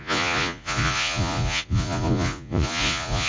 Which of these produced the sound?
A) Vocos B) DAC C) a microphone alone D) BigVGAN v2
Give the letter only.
A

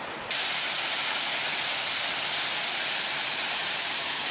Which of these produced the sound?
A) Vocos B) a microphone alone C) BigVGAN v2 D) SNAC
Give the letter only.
B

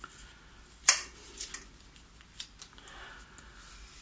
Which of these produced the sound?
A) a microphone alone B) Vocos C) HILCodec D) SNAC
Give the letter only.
A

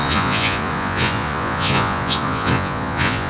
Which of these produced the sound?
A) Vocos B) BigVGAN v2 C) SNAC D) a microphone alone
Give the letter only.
A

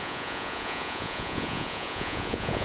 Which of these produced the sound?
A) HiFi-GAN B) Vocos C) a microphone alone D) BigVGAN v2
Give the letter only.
B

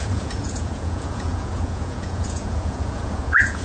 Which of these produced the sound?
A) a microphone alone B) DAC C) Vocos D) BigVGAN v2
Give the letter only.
C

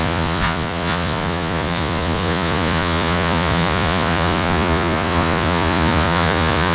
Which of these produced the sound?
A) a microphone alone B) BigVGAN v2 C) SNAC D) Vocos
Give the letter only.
D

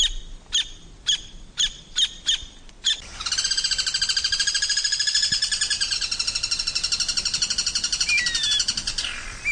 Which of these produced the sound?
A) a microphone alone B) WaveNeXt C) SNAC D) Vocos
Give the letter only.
A